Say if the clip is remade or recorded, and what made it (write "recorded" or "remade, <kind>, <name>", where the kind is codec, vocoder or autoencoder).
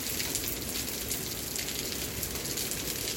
recorded